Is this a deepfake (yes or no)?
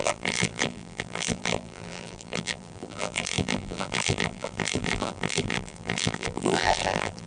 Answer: yes